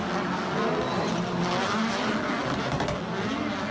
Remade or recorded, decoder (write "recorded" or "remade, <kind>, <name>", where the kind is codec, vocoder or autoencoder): recorded